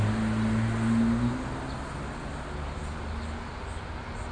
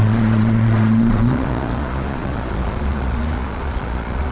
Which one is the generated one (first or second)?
second